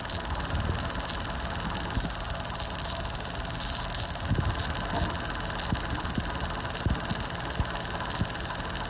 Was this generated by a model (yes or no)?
no